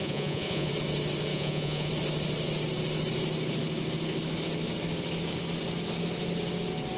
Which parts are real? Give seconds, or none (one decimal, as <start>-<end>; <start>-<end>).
0.7-1.3; 1.9-7.0